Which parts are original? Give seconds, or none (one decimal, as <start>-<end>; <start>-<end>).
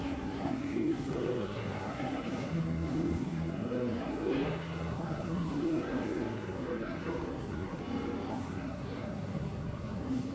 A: 7.8-8.3